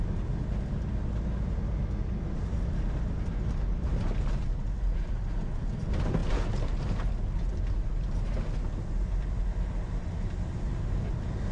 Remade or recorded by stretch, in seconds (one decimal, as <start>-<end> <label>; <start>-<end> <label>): 0.0-11.5 recorded